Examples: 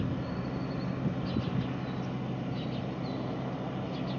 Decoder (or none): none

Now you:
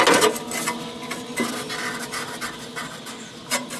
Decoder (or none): none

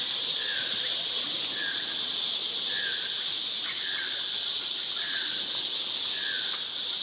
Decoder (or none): none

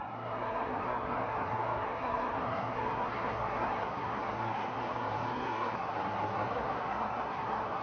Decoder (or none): codec, SNAC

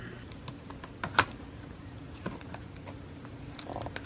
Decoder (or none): none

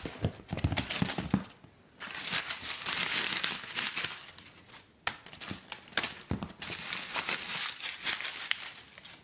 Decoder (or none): none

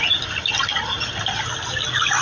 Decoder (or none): none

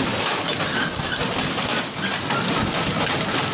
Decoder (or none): none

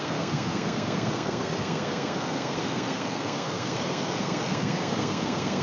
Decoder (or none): codec, SNAC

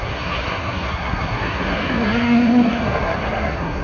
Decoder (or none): codec, SNAC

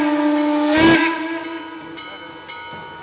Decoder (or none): none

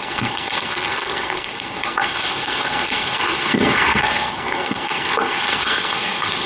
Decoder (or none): codec, SNAC